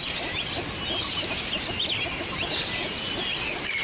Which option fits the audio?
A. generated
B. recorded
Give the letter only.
B